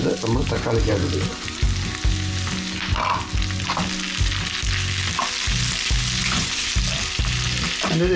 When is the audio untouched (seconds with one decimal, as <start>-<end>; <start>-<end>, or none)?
0.0-6.2; 6.7-8.2